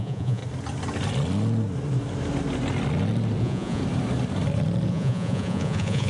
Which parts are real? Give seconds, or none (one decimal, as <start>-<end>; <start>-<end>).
0.4-3.4; 3.8-4.9